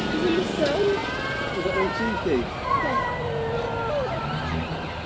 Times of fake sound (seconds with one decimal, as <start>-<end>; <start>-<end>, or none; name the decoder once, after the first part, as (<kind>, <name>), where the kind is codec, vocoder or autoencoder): none